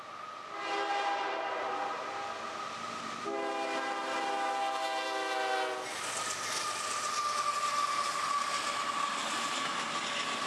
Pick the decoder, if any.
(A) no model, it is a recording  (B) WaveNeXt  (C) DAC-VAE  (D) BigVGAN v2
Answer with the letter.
A